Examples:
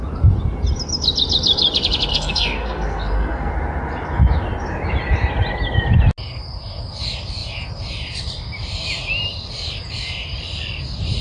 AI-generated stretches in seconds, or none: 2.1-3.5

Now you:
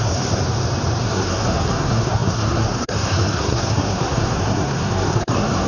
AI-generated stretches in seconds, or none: 0.0-0.4; 1.0-5.7